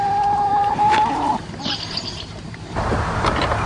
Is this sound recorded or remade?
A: remade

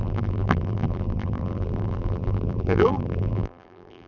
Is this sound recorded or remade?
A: remade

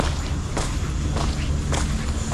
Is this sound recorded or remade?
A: recorded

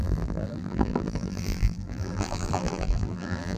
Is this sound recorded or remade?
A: remade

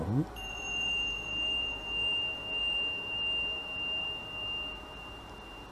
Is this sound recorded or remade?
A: remade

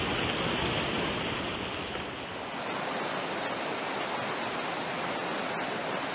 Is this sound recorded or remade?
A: recorded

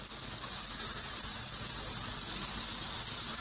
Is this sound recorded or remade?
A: recorded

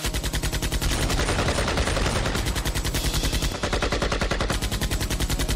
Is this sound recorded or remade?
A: recorded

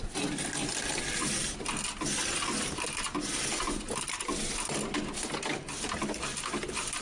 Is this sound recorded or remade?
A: recorded